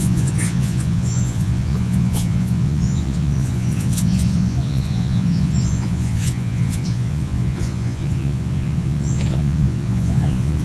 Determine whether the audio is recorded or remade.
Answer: remade